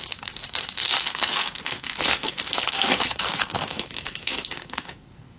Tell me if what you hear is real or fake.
fake